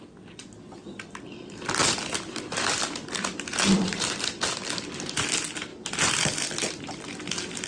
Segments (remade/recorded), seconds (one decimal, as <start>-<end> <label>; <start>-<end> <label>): 0.0-1.8 recorded; 1.8-4.4 remade; 4.4-5.7 recorded; 5.7-7.7 remade

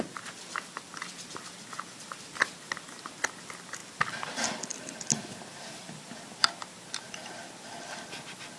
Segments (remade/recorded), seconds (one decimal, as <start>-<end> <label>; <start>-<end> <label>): 0.0-3.8 recorded; 3.8-6.7 remade; 6.7-8.6 recorded